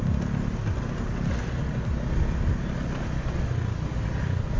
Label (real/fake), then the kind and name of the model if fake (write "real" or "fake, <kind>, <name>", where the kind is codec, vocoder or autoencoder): real